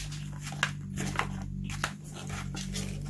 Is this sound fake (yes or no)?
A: no